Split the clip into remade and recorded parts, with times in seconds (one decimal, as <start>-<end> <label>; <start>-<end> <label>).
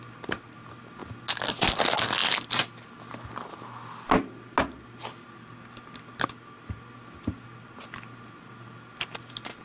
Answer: 0.0-9.6 recorded